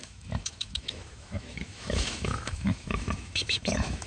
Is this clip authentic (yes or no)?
no